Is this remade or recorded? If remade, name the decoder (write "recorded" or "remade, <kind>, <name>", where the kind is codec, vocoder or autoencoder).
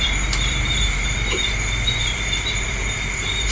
remade, vocoder, BigVGAN v2